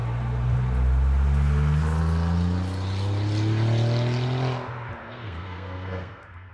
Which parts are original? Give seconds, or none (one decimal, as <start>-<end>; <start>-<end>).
0.0-5.0